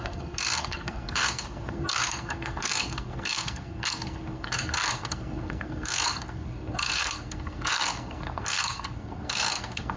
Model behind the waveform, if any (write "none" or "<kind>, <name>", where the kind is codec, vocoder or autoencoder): codec, SNAC